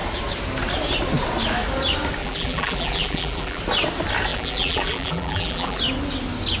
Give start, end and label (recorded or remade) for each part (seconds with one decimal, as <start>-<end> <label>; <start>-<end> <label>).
0.0-2.2 recorded; 2.2-3.6 remade; 3.6-4.3 recorded; 4.3-5.8 remade; 5.8-6.6 recorded